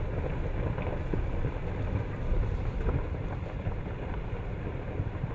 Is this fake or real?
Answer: real